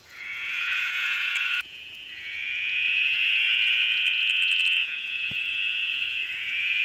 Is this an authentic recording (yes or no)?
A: no